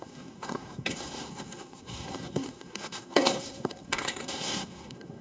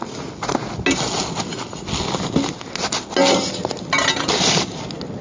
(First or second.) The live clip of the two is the second